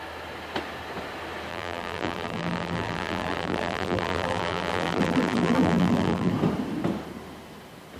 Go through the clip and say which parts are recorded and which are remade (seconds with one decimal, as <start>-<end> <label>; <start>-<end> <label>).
0.0-1.5 recorded; 1.5-6.3 remade; 6.3-8.0 recorded